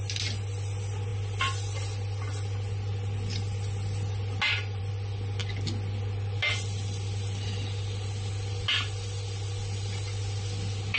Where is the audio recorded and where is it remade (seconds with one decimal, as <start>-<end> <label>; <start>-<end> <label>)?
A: 0.0-11.0 recorded